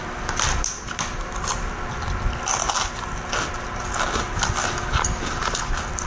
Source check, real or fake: real